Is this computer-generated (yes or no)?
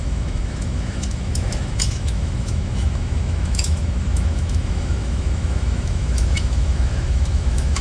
yes